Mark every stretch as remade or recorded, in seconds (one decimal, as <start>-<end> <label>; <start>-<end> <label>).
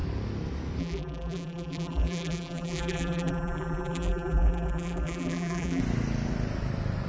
0.0-0.8 recorded; 0.8-5.8 remade; 5.8-7.1 recorded